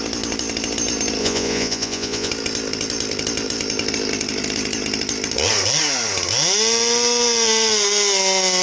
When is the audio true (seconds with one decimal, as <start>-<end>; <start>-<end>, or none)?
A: 0.0-1.2; 2.3-8.6